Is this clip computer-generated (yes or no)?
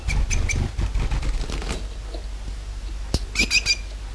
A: no